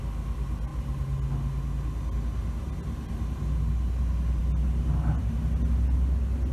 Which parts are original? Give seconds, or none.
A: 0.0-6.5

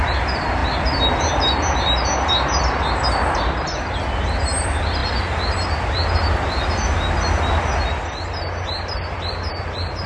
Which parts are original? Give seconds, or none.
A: 0.0-10.1